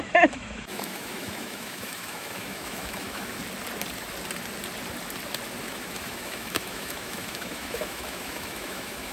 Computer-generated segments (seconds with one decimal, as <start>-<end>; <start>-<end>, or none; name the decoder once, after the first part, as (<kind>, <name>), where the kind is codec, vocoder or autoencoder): 0.0-3.4 (autoencoder, DAC-VAE); 5.6-9.1